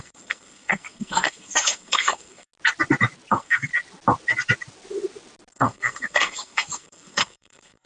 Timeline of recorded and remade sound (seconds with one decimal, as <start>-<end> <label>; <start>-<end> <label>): 0.0-2.5 remade; 2.5-3.3 recorded; 3.3-3.7 remade; 3.7-5.5 recorded; 5.5-7.9 remade